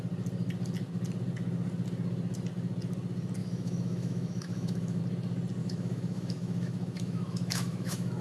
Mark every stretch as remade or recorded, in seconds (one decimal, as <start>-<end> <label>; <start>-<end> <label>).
0.0-3.4 recorded; 3.4-5.0 remade; 5.0-5.6 recorded; 5.6-8.2 remade